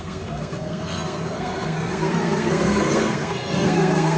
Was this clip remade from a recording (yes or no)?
yes